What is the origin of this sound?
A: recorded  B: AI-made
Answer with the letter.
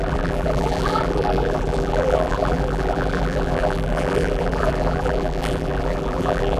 B